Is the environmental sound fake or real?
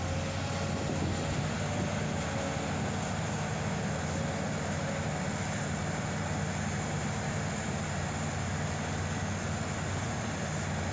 real